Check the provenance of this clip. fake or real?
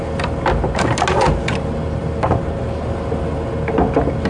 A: real